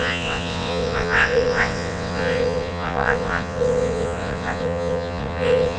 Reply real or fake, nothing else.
fake